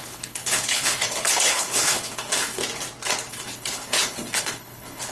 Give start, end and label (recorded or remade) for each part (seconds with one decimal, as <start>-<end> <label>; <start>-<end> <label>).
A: 0.0-2.6 remade; 2.6-3.3 recorded; 3.3-5.1 remade